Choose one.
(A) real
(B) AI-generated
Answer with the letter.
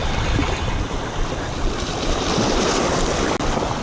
A